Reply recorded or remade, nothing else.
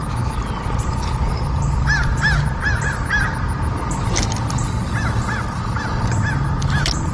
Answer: recorded